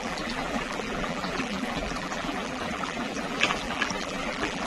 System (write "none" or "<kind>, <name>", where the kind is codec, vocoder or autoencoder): vocoder, BigVGAN v2